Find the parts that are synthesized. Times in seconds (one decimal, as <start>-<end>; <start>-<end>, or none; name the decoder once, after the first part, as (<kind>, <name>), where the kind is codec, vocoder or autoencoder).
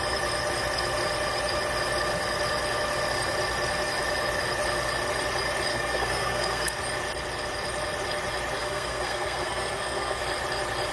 5.7-6.8 (codec, SNAC); 8.6-10.2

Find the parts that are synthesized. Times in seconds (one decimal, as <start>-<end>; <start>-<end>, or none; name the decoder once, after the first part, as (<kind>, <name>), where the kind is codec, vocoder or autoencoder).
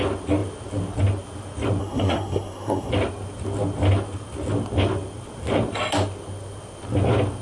1.8-2.9 (codec, SNAC)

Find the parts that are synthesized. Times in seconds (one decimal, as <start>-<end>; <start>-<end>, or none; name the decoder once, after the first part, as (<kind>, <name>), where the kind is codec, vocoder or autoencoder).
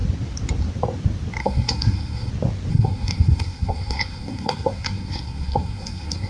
1.4-2.3 (codec, SNAC); 2.7-6.3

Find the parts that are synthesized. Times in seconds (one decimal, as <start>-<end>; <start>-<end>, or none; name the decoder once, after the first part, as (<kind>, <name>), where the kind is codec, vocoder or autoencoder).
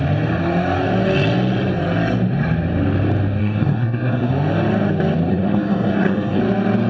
3.4-4.3 (codec, SNAC); 5.3-6.4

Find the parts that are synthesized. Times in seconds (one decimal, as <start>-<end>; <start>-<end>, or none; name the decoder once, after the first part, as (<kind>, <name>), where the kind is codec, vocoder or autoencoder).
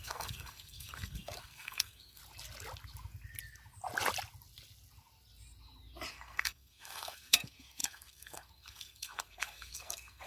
0.0-2.2 (codec, SNAC); 6.1-10.3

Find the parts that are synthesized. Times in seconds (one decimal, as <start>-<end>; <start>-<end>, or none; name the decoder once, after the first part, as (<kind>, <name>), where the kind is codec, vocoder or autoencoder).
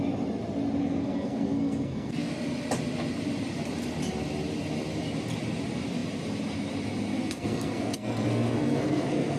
0.8-2.3 (codec, SNAC); 7.1-9.4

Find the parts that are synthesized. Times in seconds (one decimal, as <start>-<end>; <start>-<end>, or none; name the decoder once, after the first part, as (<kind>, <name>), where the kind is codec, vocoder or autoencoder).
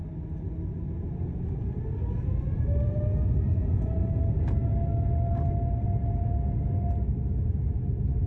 none